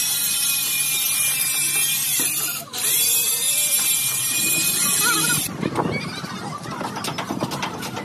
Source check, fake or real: real